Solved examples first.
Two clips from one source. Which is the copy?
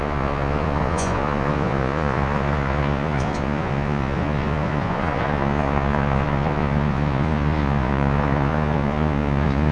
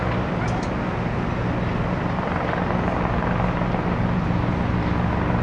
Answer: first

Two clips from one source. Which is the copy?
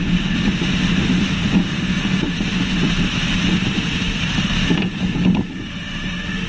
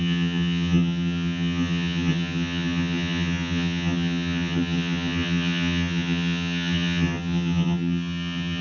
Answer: second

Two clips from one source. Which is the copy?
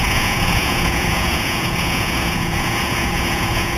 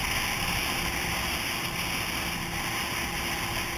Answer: first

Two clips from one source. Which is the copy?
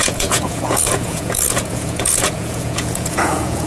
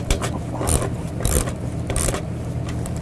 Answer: first